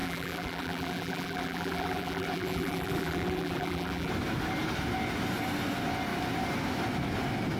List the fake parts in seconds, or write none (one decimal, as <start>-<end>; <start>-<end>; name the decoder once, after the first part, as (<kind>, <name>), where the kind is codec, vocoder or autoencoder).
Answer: 0.0-4.1 (vocoder, BigVGAN v2)